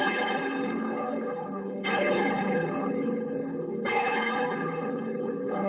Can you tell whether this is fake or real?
fake